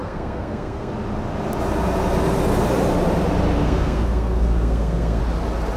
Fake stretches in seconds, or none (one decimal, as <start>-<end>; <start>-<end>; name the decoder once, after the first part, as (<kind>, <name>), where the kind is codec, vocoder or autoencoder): 0.0-0.9 (codec, SNAC); 3.6-5.2